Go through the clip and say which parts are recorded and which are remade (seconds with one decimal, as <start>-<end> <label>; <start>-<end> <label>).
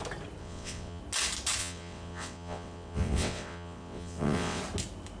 0.0-0.4 recorded; 0.4-1.0 remade; 1.0-1.6 recorded; 1.6-4.6 remade; 4.6-5.2 recorded